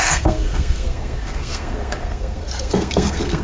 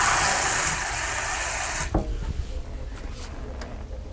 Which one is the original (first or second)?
second